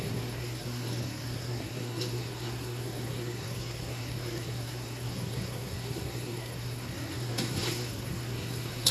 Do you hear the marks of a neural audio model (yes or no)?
yes